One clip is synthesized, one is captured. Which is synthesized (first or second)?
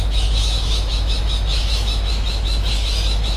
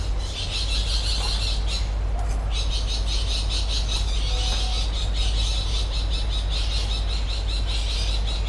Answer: first